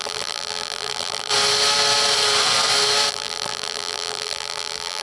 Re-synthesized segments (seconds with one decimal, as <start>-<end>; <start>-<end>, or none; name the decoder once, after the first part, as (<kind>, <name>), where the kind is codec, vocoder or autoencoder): 0.0-1.3 (vocoder, BigVGAN v2); 3.1-5.0